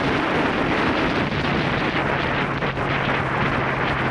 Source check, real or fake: real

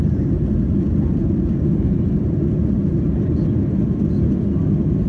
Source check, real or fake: real